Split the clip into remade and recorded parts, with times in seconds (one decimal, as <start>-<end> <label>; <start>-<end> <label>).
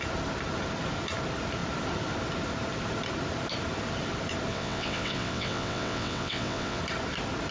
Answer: 0.0-4.5 recorded; 4.5-6.8 remade; 6.8-7.5 recorded